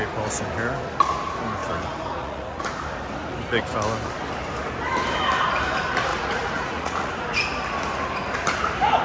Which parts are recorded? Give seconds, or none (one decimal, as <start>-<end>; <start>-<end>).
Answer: 0.0-1.6; 2.6-6.1; 7.1-9.0